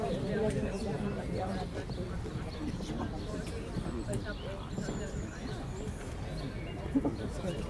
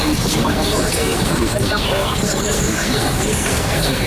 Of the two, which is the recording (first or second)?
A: first